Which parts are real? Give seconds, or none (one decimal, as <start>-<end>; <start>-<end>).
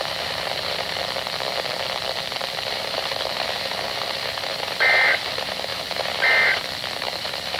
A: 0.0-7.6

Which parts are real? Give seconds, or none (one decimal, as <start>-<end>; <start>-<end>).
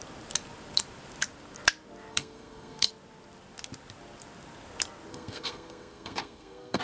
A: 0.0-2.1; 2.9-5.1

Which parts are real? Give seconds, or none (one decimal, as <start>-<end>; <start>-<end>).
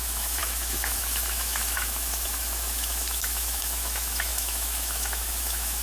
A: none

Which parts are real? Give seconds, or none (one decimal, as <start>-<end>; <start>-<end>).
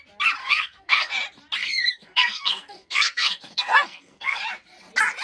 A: 0.0-0.4; 1.1-1.6; 4.4-5.2